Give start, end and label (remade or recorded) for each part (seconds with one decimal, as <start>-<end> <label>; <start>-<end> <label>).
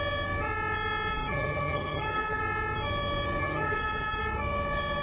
0.0-1.1 recorded; 1.1-2.4 remade; 2.4-3.4 recorded; 3.4-4.2 remade; 4.2-5.0 recorded